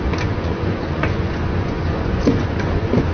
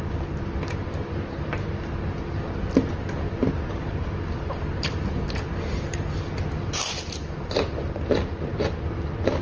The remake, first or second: first